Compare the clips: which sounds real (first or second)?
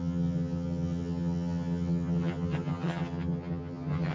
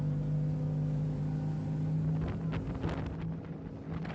second